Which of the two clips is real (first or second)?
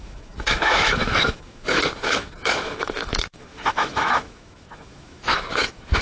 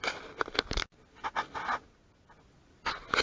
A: second